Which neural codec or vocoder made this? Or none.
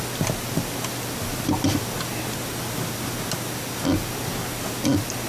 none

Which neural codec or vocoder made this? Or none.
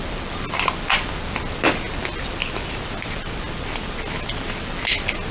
none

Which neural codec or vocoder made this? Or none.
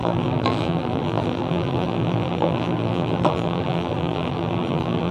vocoder, BigVGAN v2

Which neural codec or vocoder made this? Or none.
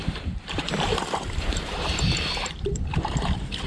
vocoder, BigVGAN v2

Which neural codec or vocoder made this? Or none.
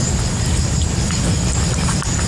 none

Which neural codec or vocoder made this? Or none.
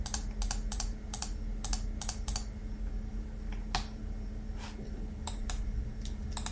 none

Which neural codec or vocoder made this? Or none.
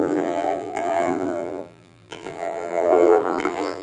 vocoder, BigVGAN v2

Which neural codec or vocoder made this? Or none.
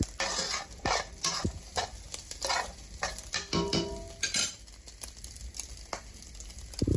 none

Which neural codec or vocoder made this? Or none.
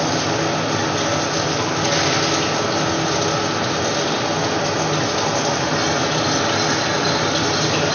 none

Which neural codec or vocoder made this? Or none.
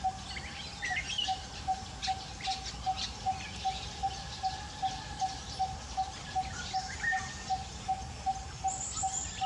vocoder, BigVGAN v2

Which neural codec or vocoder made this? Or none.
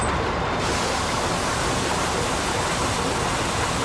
none